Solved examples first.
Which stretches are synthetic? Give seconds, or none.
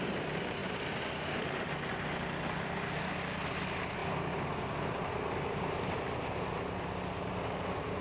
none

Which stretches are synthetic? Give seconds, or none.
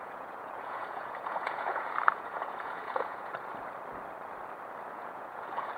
0.0-3.5 (vocoder, Vocos); 4.9-5.8